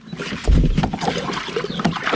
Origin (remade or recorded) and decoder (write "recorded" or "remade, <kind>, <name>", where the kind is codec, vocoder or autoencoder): recorded